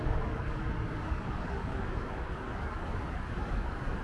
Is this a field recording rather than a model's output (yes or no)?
no